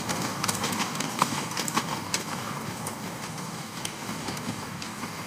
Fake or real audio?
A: fake